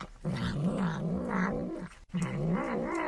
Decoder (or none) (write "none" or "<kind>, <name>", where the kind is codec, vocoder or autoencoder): none